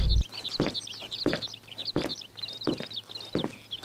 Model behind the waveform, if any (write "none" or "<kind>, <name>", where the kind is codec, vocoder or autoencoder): none